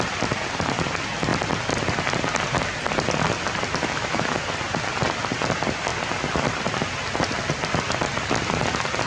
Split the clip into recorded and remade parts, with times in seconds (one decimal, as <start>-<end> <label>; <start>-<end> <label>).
0.0-3.8 recorded; 3.8-4.4 remade; 4.4-9.1 recorded